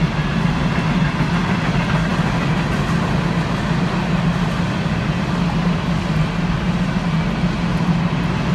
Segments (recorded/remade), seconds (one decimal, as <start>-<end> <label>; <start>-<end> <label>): 0.0-8.5 recorded